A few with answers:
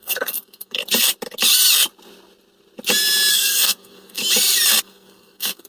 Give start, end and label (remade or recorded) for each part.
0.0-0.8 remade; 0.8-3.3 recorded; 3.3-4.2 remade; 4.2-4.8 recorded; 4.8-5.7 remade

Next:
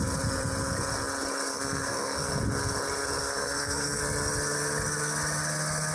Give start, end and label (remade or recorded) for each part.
0.0-1.5 recorded; 1.5-2.3 remade; 2.3-3.2 recorded; 3.2-4.0 remade; 4.0-5.9 recorded